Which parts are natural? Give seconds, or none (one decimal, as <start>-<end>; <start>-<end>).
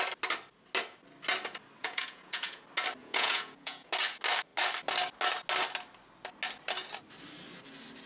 0.0-1.8; 2.6-3.0; 3.9-8.1